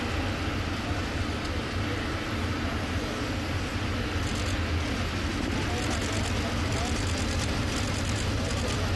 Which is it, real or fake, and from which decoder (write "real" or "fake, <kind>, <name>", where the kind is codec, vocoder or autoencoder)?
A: real